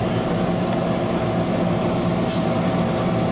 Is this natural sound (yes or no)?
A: yes